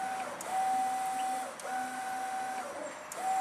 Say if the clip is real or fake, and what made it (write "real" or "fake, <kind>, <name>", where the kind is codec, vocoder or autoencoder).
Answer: real